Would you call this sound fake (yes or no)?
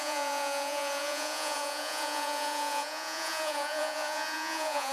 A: yes